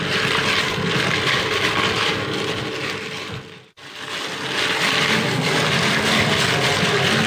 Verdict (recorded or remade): recorded